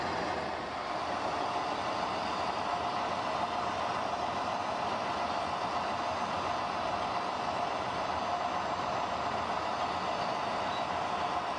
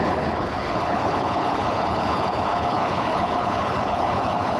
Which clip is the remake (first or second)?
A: second